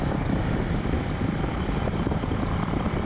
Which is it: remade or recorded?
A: recorded